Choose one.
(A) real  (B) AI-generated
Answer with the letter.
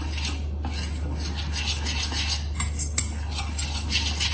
A